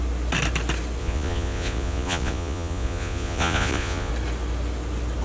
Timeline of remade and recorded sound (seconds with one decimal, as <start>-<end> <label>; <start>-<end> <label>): 0.0-1.0 recorded; 1.0-4.1 remade; 4.1-5.2 recorded